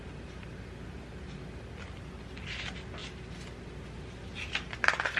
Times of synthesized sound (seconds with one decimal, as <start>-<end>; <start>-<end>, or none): none